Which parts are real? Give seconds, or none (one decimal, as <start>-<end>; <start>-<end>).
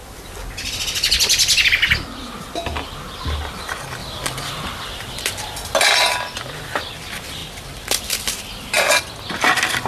0.0-9.9